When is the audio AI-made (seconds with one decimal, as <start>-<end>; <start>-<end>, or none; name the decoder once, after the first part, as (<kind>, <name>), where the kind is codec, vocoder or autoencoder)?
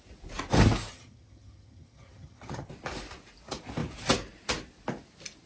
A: 0.9-2.7 (vocoder, HiFi-GAN)